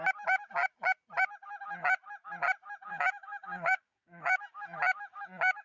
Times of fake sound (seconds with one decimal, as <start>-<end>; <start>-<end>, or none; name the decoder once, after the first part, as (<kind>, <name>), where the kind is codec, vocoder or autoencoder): 2.9-4.4 (codec, DAC)